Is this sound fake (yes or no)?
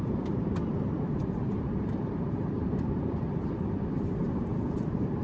yes